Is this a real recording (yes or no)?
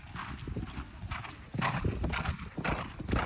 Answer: yes